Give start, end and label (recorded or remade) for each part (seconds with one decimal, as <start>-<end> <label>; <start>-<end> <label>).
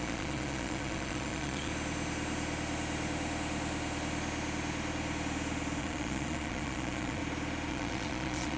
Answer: 0.0-1.7 remade; 1.7-5.8 recorded; 5.8-7.2 remade; 7.2-7.7 recorded; 7.7-8.6 remade